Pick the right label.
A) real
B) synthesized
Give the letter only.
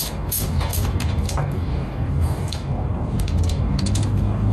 B